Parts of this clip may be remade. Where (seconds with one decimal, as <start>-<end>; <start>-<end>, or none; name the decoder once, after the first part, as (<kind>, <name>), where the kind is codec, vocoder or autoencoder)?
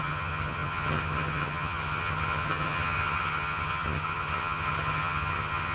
0.0-5.7 (vocoder, HiFi-GAN)